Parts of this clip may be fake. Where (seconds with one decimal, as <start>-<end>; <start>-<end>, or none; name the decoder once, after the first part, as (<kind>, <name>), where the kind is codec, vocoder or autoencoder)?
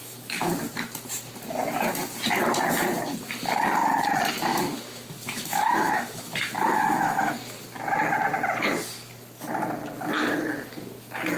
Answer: 0.0-0.5 (autoencoder, DAC-VAE); 4.5-7.3